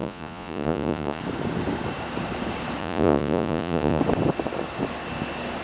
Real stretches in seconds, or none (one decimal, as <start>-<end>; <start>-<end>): 1.2-2.8; 4.0-5.6